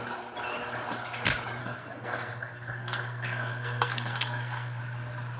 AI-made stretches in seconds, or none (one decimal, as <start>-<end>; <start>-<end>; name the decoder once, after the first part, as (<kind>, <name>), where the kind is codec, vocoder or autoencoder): 1.6-4.8 (codec, SNAC)